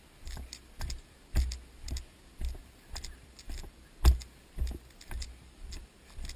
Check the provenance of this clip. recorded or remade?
recorded